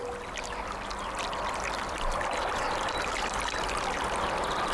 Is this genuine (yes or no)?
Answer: yes